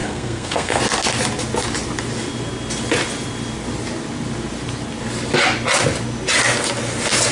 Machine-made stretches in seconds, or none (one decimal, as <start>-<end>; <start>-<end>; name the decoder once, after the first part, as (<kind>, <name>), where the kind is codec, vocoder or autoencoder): 0.0-0.8 (codec, SNAC)